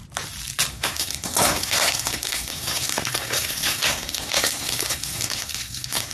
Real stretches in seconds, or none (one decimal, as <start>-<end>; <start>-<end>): 0.0-0.7